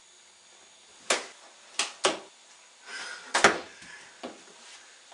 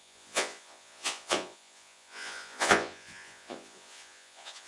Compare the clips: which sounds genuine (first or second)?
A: first